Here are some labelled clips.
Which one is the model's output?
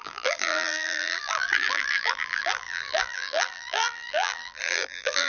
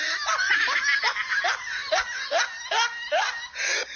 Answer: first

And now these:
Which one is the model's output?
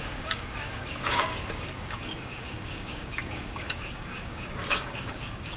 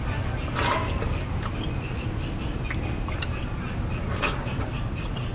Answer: first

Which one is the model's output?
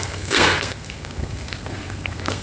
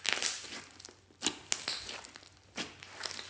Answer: first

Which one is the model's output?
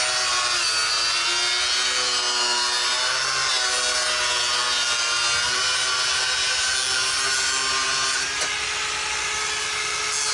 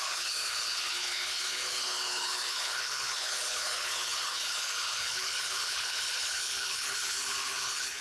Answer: second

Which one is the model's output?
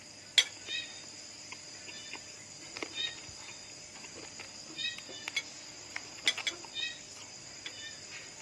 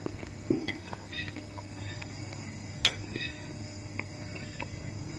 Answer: second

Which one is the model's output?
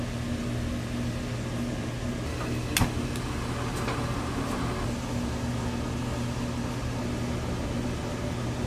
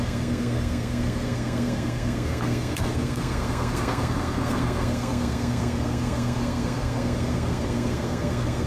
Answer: second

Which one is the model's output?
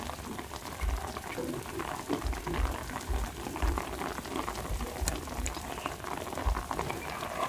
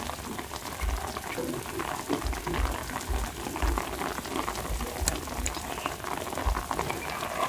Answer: first